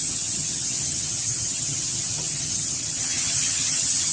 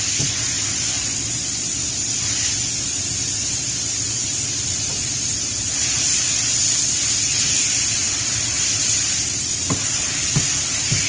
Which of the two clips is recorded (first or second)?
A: second